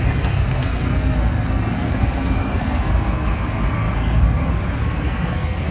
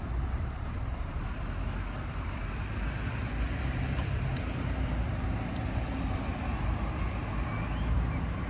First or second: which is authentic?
second